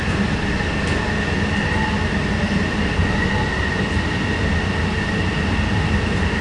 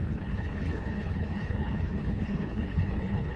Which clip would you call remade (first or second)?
second